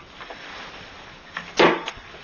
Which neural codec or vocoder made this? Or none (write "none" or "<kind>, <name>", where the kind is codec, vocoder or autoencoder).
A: none